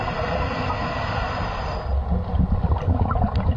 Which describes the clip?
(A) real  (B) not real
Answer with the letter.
A